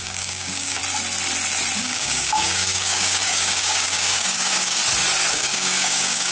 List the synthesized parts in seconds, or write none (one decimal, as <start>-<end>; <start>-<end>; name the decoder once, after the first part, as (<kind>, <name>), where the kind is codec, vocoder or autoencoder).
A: 0.0-0.8 (codec, DAC); 1.8-4.8; 5.3-6.3